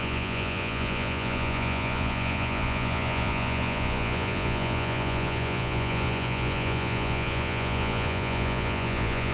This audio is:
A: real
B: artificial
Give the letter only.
B